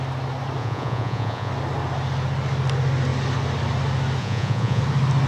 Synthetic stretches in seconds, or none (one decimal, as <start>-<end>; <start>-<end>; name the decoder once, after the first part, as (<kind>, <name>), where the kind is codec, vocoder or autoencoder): 0.6-1.5 (vocoder, Vocos); 4.2-4.8